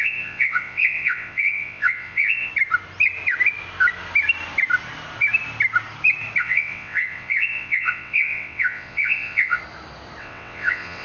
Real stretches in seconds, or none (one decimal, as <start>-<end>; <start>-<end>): 2.5-6.4; 9.6-10.2